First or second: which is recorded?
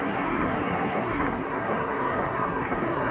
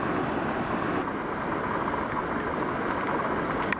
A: second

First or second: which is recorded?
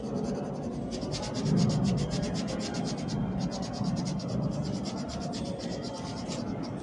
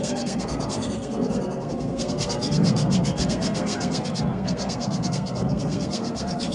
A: first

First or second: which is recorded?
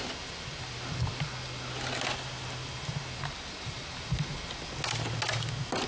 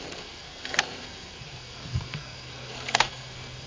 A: first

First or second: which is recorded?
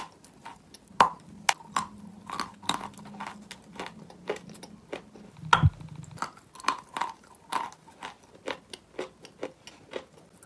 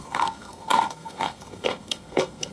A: first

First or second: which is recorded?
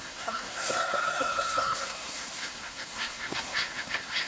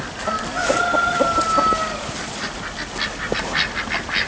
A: second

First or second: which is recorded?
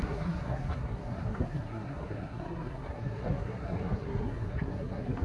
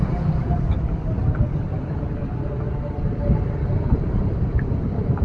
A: second